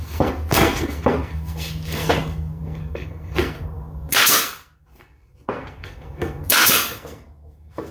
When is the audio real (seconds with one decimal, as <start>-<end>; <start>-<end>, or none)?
none